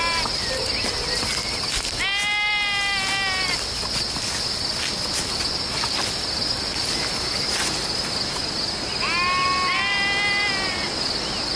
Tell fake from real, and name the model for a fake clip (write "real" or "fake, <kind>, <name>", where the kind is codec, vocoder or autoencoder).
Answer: real